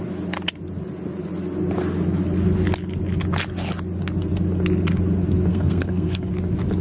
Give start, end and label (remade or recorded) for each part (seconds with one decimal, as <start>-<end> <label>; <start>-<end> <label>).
0.0-5.5 recorded; 5.5-6.3 remade; 6.3-6.8 recorded